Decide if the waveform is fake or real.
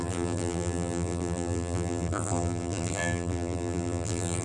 fake